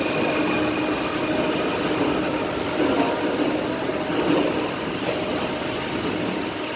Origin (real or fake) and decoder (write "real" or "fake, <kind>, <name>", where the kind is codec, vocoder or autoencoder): real